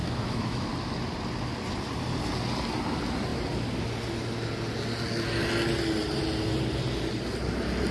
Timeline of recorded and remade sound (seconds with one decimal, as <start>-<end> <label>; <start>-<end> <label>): 0.0-0.7 remade; 0.7-7.9 recorded